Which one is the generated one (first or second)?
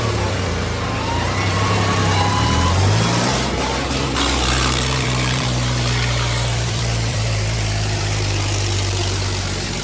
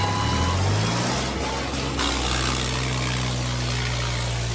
first